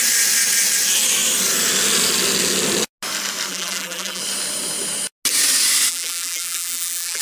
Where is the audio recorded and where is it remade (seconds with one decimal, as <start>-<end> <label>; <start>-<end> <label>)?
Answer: 0.0-3.5 recorded; 3.5-4.2 remade; 4.2-5.9 recorded; 5.9-7.2 remade